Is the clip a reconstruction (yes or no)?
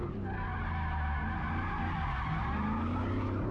no